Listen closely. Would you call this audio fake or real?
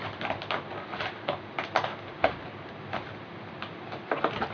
real